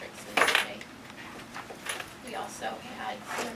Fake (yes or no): no